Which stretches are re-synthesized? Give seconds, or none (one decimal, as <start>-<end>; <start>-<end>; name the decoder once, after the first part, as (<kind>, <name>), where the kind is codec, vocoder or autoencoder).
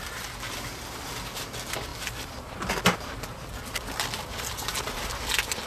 none